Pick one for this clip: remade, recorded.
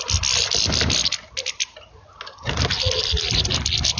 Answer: recorded